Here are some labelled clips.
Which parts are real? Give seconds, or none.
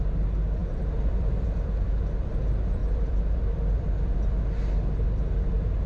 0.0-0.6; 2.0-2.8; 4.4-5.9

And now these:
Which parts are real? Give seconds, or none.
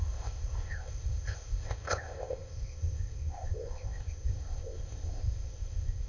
none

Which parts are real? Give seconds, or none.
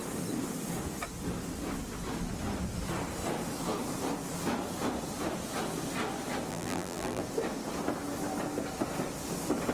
0.0-6.5; 7.2-9.7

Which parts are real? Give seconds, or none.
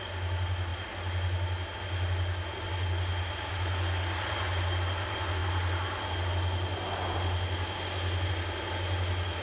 0.0-9.4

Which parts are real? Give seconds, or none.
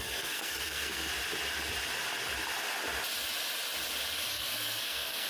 1.1-4.3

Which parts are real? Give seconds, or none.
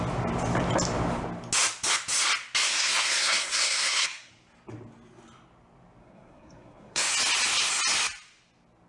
0.0-2.6; 4.3-6.0; 7.1-8.9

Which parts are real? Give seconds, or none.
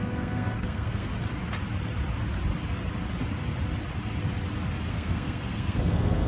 1.1-4.9